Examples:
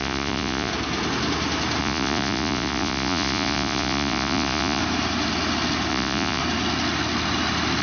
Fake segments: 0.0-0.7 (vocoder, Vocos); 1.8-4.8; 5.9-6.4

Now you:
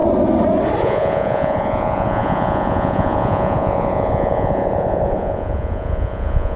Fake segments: 0.8-6.6 (vocoder, Vocos)

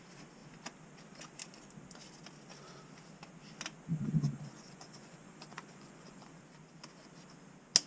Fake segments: 3.9-6.4 (vocoder, Vocos)

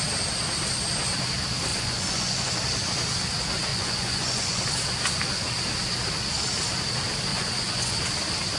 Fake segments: 1.7-2.5 (vocoder, Vocos); 3.7-4.6; 7.3-8.0

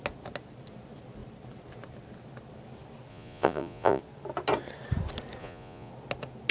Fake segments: 3.1-4.0 (vocoder, Vocos); 5.4-5.9

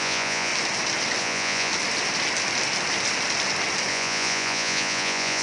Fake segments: 0.0-0.5 (vocoder, Vocos); 1.2-1.7; 3.9-5.4

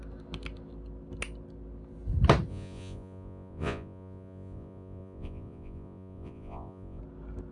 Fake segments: 2.5-7.0 (vocoder, Vocos)

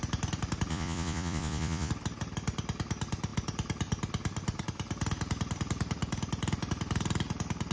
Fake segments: 0.7-1.9 (vocoder, Vocos)